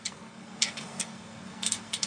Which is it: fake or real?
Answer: fake